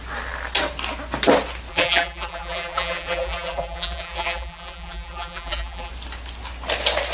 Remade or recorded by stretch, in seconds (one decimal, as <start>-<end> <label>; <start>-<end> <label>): 0.0-1.7 recorded; 1.7-5.9 remade; 5.9-7.1 recorded